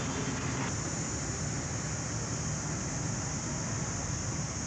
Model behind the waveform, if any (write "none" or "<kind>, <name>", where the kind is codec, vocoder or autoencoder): none